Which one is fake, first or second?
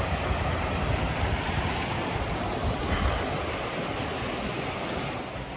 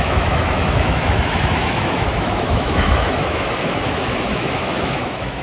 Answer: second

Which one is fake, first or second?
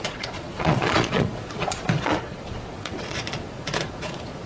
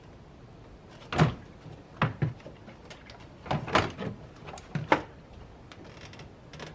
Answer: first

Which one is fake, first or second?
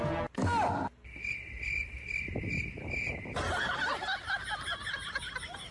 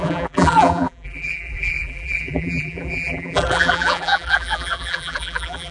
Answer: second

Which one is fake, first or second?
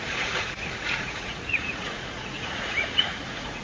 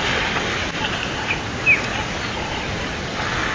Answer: first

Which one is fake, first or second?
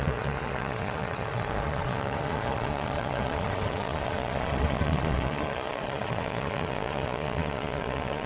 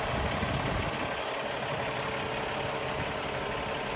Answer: first